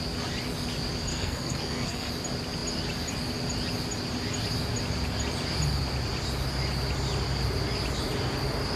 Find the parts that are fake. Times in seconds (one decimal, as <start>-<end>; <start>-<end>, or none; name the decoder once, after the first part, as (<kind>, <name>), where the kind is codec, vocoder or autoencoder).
1.1-2.1 (codec, SNAC)